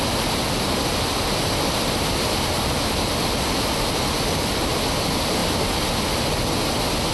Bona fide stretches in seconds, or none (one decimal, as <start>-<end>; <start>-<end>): 0.0-7.1